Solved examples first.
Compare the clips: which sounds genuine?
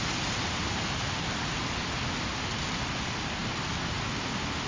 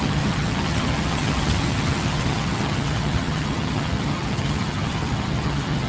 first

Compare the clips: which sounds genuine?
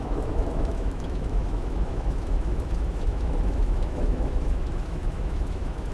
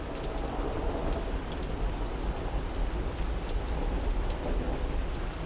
second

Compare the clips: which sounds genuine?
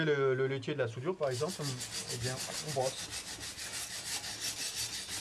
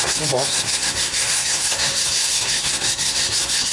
first